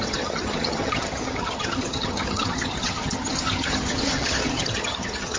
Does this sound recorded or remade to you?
remade